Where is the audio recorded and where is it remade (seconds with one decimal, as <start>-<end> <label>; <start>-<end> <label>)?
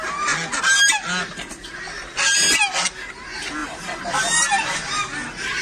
0.0-3.6 recorded; 3.6-4.9 remade; 4.9-5.6 recorded